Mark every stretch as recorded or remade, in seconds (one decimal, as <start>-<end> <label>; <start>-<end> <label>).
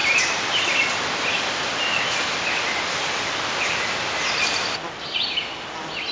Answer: 0.0-6.1 recorded